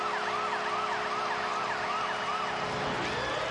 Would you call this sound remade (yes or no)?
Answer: no